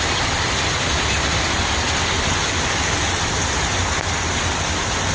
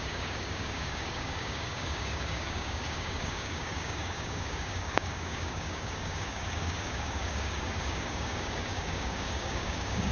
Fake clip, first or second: second